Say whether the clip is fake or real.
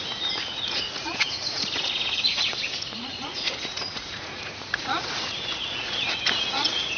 fake